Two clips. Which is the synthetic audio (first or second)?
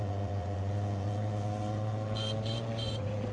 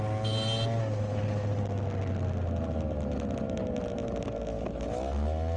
first